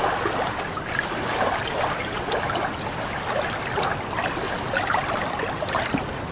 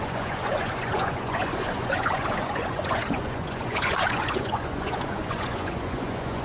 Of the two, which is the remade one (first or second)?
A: second